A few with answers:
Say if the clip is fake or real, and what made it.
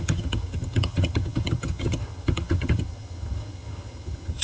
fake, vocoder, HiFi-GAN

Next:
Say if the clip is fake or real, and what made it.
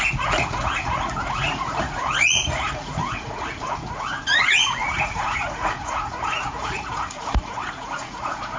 fake, vocoder, Vocos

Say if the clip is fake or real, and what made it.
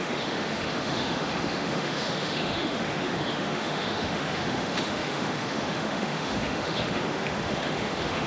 fake, autoencoder, DAC-VAE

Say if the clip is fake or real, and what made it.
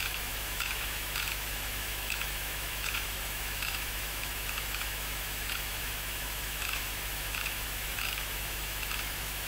fake, autoencoder, DAC-VAE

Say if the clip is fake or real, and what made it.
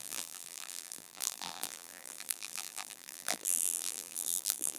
fake, vocoder, BigVGAN v2